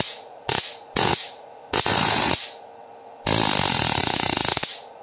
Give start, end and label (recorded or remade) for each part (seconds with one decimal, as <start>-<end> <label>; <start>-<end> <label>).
0.0-2.4 remade; 2.4-3.7 recorded; 3.7-5.0 remade